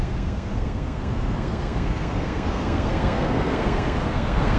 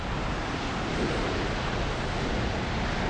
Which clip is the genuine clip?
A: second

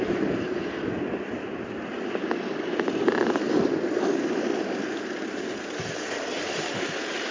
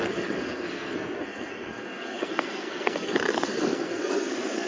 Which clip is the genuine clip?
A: first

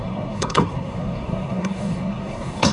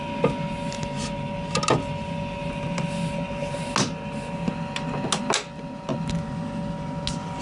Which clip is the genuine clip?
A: second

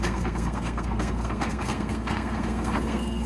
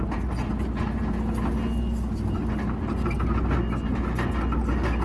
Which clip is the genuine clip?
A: second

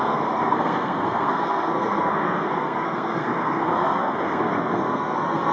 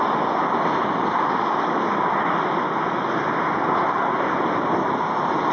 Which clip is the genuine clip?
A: second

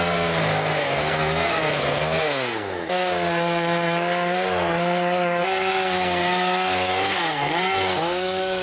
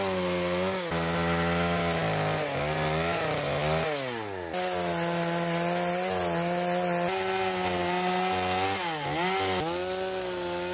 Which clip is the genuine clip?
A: second